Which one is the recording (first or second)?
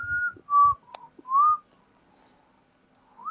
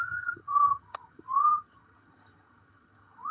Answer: first